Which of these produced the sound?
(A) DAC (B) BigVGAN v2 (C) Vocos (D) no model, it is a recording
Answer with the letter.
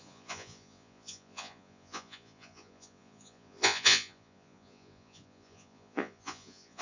C